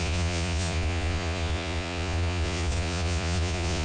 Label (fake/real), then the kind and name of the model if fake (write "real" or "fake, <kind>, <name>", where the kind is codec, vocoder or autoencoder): fake, vocoder, Vocos